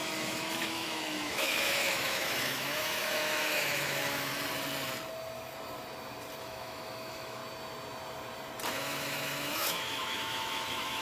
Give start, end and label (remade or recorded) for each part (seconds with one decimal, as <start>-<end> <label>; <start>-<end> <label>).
0.0-4.3 remade; 4.3-6.4 recorded; 6.4-7.4 remade; 7.4-8.7 recorded; 8.7-11.0 remade